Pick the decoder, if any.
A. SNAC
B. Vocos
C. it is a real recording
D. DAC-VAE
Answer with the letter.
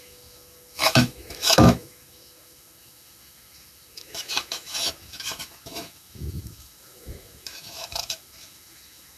D